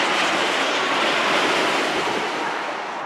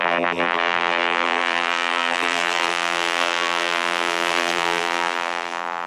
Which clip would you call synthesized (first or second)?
second